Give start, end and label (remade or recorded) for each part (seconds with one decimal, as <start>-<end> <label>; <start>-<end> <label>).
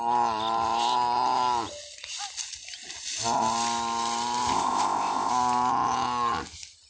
0.0-4.5 recorded; 4.5-5.3 remade; 5.3-6.9 recorded